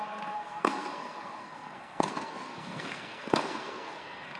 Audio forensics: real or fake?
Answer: fake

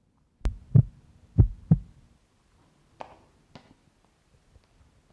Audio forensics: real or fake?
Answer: real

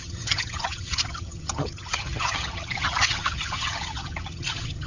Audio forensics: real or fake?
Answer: fake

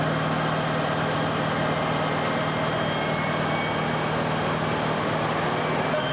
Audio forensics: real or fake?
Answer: real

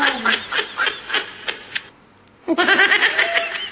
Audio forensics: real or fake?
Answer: real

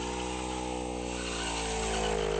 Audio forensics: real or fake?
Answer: real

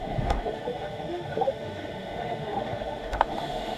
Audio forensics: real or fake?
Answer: fake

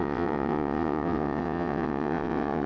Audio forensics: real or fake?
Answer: fake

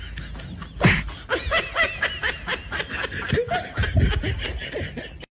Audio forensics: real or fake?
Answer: real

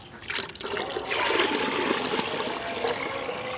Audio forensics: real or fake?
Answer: real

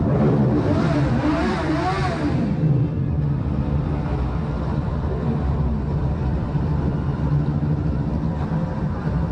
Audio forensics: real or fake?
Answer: fake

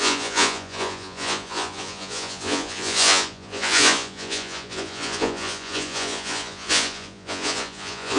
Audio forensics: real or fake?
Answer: fake